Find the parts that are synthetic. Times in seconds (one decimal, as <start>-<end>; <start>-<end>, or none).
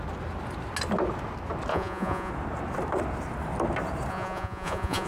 1.7-2.3; 4.1-5.1